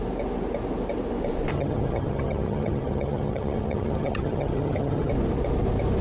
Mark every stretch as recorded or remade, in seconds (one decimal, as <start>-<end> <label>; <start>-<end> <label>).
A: 0.0-1.5 recorded; 1.5-5.1 remade; 5.1-6.0 recorded